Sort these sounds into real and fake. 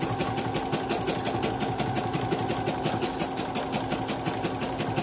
real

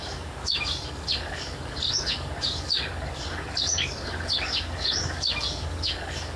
fake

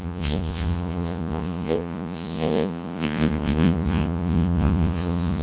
fake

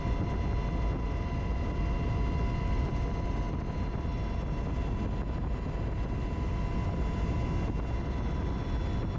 real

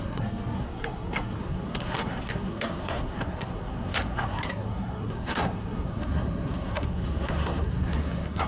fake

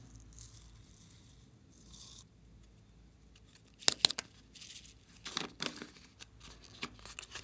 real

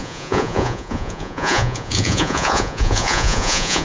fake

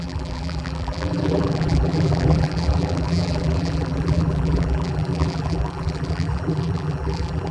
fake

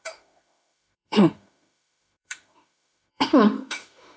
fake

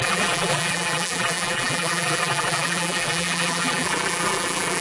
fake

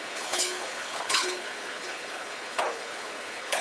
fake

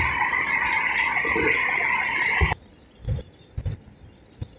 real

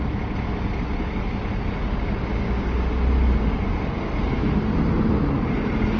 real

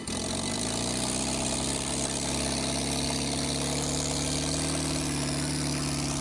real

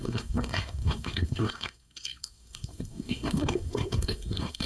fake